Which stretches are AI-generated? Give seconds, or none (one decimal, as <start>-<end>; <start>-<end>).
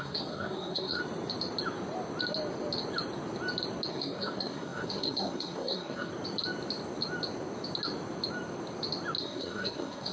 0.0-1.0; 3.9-6.1; 9.2-10.1